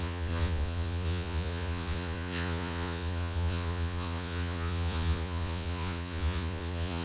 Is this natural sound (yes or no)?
no